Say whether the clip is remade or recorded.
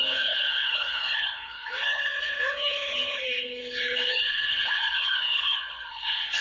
remade